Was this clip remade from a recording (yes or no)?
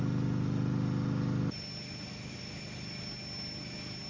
no